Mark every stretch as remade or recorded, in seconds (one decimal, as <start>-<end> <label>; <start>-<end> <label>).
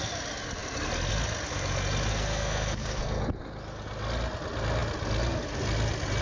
0.0-2.1 recorded; 2.1-3.2 remade; 3.2-6.2 recorded